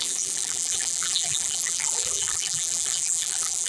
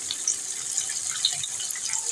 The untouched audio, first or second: second